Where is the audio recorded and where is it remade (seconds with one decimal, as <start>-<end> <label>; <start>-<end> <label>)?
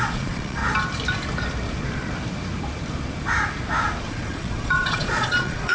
0.0-0.6 remade; 0.6-4.0 recorded; 4.0-5.7 remade